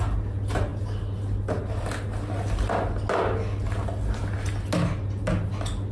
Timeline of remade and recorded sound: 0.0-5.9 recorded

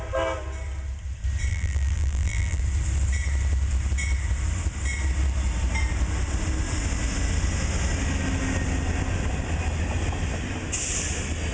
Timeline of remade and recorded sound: 0.0-1.5 recorded; 1.5-2.6 remade; 2.6-11.5 recorded

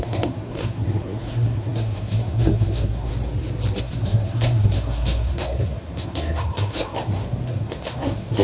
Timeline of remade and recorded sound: 0.0-3.1 remade; 3.1-3.8 recorded; 3.8-8.4 remade

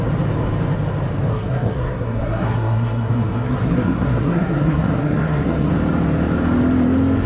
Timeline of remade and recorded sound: 0.0-1.3 recorded; 1.3-5.7 remade; 5.7-7.3 recorded

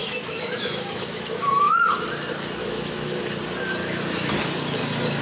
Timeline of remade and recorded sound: 0.0-1.9 remade; 1.9-2.6 recorded; 2.6-3.2 remade; 3.2-3.8 recorded; 3.8-4.3 remade; 4.3-5.2 recorded

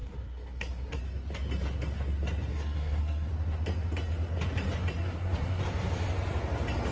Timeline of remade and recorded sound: 0.0-1.0 remade; 1.0-2.5 recorded; 2.5-3.3 remade; 3.3-5.0 recorded; 5.0-5.6 remade; 5.6-6.9 recorded

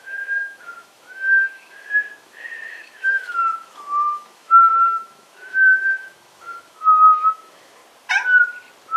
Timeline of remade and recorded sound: 0.0-7.8 remade; 7.8-9.0 recorded

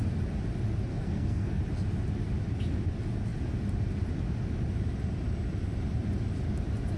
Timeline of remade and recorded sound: 0.0-0.9 recorded; 0.9-1.6 remade; 1.6-7.0 recorded